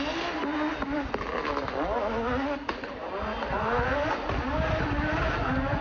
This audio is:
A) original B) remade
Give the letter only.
A